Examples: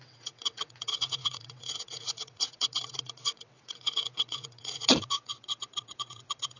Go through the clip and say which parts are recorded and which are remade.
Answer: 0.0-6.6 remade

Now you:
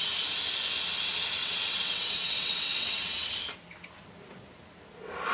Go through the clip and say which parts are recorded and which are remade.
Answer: 0.0-1.4 recorded; 1.4-3.4 remade; 3.4-5.3 recorded

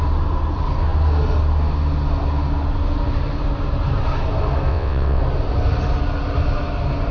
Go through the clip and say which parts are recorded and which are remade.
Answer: 0.0-4.7 recorded; 4.7-5.2 remade; 5.2-7.1 recorded

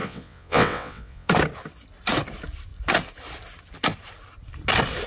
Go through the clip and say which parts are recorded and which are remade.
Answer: 0.0-1.3 remade; 1.3-5.1 recorded

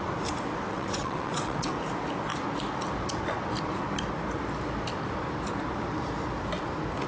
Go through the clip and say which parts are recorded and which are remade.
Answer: 0.0-0.7 recorded; 0.7-1.7 remade; 1.7-7.1 recorded